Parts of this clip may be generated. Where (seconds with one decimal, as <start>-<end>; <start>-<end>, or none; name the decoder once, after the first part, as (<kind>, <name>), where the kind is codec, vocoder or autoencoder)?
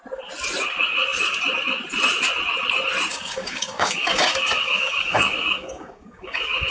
3.1-6.7 (codec, DAC)